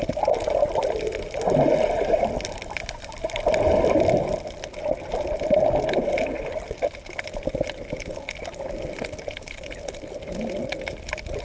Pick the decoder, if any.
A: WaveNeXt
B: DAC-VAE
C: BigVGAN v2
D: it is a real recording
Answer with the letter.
D